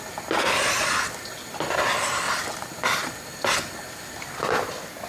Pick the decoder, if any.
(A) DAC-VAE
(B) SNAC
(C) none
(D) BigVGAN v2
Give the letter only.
C